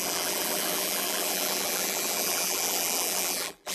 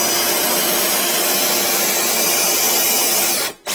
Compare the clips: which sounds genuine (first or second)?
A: second